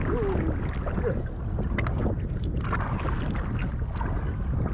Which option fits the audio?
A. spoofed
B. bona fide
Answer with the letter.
B